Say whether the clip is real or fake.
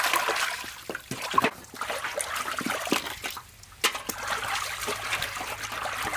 real